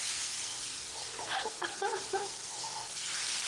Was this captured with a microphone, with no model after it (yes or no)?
no